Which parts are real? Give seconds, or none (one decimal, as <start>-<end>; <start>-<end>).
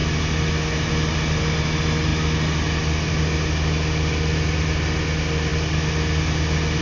0.0-6.8